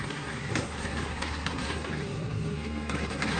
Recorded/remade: remade